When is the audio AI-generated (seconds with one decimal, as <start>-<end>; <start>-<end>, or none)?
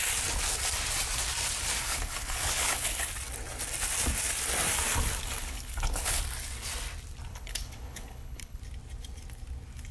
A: 1.8-3.1; 5.4-6.2; 7.3-8.6